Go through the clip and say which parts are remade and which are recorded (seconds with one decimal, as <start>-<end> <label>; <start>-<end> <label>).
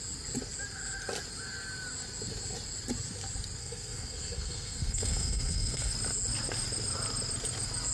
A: 0.0-3.6 recorded; 3.6-5.9 remade; 5.9-7.9 recorded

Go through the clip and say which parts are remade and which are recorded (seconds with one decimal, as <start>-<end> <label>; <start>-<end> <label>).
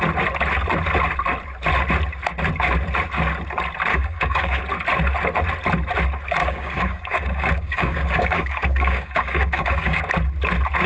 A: 0.0-3.9 recorded; 3.9-4.6 remade; 4.6-6.4 recorded; 6.4-10.1 remade; 10.1-10.9 recorded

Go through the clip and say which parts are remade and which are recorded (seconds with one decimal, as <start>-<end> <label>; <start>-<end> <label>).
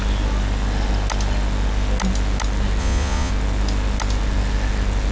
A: 0.0-2.8 recorded; 2.8-3.3 remade; 3.3-5.1 recorded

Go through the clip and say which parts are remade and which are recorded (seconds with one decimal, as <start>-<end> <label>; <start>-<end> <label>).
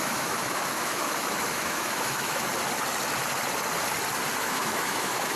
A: 0.0-2.5 remade; 2.5-4.4 recorded; 4.4-5.4 remade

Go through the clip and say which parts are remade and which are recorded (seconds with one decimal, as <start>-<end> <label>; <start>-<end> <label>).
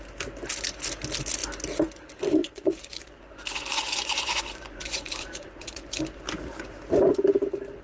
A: 0.0-2.4 recorded; 2.4-6.0 remade; 6.0-7.8 recorded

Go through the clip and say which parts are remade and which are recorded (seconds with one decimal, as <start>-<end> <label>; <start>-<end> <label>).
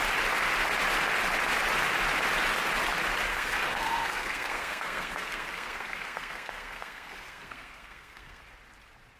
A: 0.0-3.3 recorded; 3.3-8.4 remade; 8.4-9.2 recorded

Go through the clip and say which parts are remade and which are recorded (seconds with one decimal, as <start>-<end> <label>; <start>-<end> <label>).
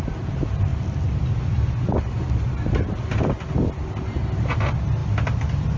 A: 0.0-5.8 recorded